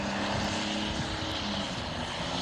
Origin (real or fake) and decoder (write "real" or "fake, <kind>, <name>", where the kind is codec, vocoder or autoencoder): real